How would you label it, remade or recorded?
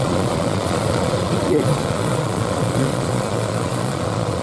remade